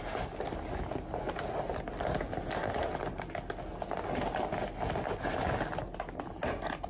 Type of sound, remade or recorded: recorded